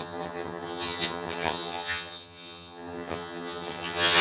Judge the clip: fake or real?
fake